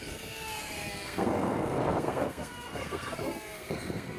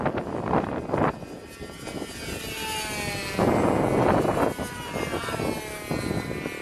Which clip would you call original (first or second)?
second